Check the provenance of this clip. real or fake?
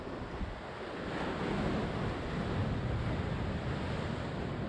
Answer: real